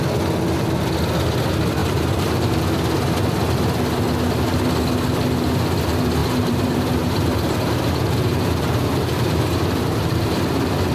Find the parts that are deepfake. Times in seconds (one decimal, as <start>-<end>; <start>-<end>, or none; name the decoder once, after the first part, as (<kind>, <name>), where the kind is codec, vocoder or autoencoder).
1.8-2.6 (vocoder, BigVGAN v2); 6.2-10.9